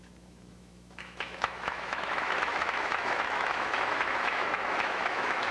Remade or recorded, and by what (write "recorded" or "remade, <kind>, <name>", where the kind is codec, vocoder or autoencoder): remade, autoencoder, DAC-VAE